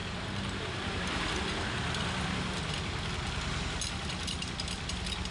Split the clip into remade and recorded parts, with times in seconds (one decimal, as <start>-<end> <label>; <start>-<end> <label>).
0.0-1.4 remade; 1.4-5.3 recorded